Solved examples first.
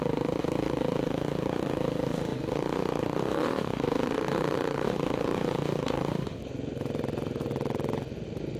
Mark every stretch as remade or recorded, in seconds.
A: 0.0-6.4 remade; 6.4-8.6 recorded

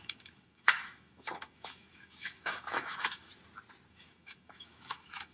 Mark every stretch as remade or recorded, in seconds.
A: 0.0-3.3 remade; 3.3-3.9 recorded; 3.9-5.3 remade

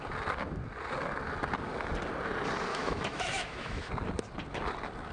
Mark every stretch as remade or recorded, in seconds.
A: 0.0-2.7 recorded; 2.7-3.9 remade; 3.9-5.1 recorded

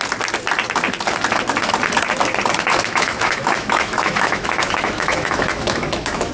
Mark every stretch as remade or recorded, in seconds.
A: 0.0-2.7 recorded; 2.7-6.3 remade

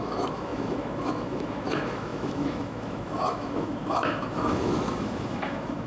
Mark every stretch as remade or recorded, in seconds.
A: 0.0-5.9 remade

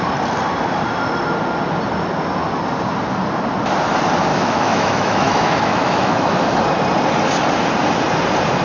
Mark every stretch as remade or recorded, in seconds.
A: 0.0-4.3 recorded; 4.3-6.3 remade; 6.3-8.6 recorded

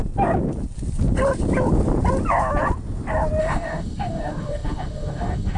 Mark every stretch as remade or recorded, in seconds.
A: 0.0-3.4 recorded; 3.4-5.6 remade

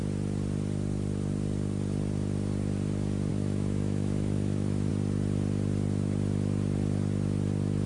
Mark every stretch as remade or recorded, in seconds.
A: 0.0-3.3 recorded; 3.3-4.9 remade; 4.9-7.9 recorded